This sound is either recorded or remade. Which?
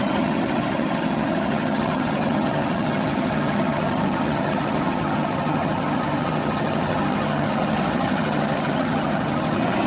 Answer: remade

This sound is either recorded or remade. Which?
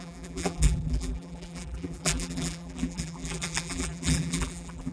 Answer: remade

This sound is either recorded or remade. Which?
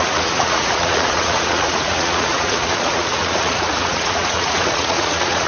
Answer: remade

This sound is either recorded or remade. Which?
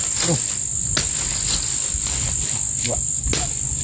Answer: recorded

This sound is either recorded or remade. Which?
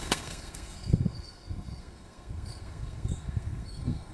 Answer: remade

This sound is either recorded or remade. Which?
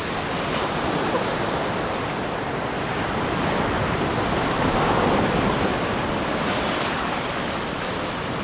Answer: recorded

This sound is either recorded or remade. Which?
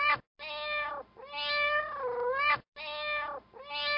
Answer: recorded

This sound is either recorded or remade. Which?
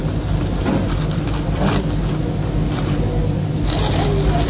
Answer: recorded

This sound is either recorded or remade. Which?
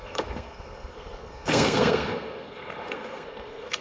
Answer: remade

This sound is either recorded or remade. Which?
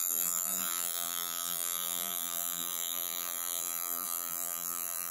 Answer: remade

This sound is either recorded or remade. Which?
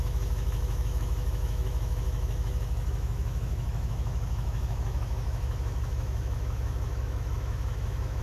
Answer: remade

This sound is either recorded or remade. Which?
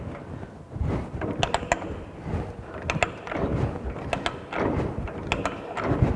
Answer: recorded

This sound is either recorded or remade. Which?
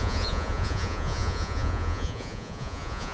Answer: remade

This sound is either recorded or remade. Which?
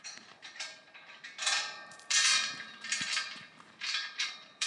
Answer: remade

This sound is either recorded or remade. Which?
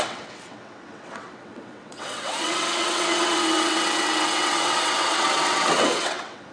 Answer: remade